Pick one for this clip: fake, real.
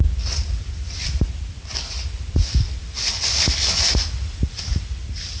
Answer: real